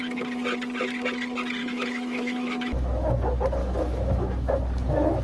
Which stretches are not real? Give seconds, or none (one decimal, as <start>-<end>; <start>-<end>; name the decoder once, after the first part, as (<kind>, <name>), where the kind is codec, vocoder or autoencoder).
1.6-3.1 (autoencoder, DAC-VAE); 3.6-4.6